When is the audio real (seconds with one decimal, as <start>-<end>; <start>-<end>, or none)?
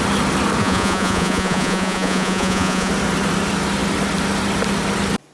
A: 0.0-0.6; 2.9-5.3